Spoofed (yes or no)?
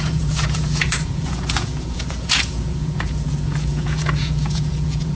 yes